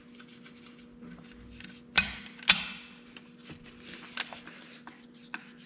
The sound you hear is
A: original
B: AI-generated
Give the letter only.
A